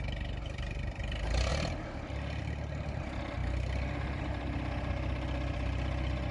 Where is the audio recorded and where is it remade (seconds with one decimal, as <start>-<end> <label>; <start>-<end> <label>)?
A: 0.0-6.3 recorded